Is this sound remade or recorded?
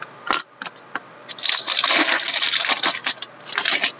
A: recorded